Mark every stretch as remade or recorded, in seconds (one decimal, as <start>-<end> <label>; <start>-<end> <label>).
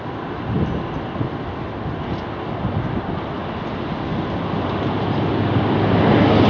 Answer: 0.0-6.5 recorded